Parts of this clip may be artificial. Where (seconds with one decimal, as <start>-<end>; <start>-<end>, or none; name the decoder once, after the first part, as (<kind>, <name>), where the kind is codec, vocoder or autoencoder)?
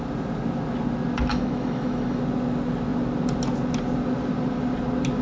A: 1.3-2.2 (autoencoder, DAC-VAE)